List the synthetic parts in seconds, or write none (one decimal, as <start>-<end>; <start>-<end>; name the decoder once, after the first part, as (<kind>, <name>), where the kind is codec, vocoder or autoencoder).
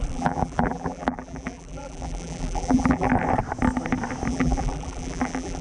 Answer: 0.0-3.1 (vocoder, BigVGAN v2); 4.3-5.6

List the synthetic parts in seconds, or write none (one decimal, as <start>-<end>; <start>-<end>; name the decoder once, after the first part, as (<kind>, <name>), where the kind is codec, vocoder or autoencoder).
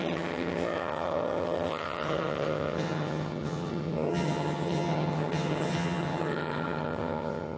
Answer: 0.0-7.6 (vocoder, HiFi-GAN)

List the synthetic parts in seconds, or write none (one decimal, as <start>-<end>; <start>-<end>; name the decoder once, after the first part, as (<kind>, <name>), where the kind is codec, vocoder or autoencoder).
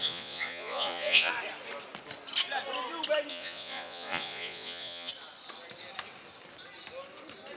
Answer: 0.0-1.3 (vocoder, Vocos); 3.3-5.1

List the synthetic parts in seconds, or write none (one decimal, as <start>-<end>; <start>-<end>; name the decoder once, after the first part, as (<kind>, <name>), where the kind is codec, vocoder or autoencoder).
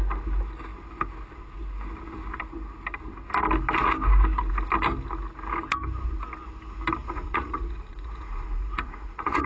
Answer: 7.0-9.5 (vocoder, Vocos)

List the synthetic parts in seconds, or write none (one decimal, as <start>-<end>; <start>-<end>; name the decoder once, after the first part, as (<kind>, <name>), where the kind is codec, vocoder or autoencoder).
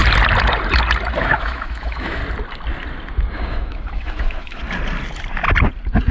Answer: 1.2-2.2 (autoencoder, DAC-VAE); 3.5-4.6